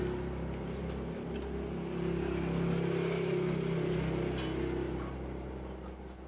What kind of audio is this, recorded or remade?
recorded